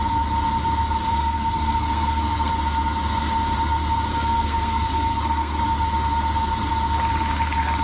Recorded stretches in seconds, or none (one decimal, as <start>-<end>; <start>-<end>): 0.0-1.1; 2.5-4.1; 5.6-7.8